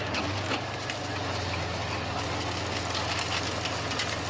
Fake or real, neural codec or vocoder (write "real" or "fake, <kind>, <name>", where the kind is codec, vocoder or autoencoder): real